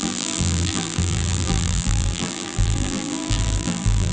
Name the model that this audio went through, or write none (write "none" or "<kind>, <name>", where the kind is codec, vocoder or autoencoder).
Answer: vocoder, BigVGAN v2